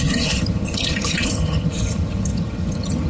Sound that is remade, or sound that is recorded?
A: remade